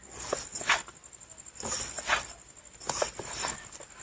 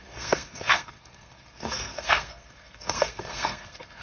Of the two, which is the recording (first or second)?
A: first